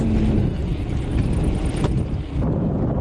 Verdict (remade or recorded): recorded